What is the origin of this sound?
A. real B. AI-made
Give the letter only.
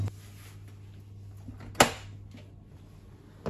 A